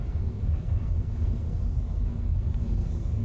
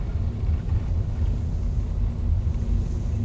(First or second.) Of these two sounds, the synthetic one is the first